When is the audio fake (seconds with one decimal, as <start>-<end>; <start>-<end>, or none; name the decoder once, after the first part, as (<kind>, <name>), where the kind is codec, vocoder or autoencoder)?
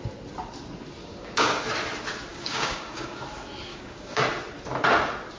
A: 1.0-1.6 (codec, DAC); 2.3-3.2; 3.7-4.2